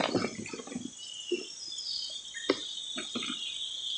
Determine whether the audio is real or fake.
real